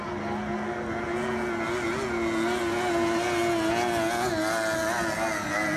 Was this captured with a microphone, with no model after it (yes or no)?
yes